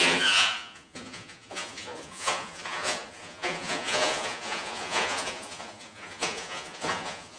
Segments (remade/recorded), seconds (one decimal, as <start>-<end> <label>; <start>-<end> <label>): 0.0-7.4 remade